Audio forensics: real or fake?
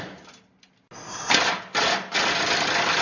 real